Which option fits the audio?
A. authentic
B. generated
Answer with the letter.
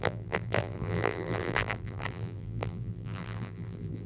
B